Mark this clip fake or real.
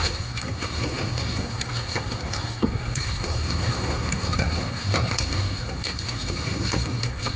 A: fake